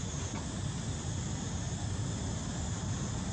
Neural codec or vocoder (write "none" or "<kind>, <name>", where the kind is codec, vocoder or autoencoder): none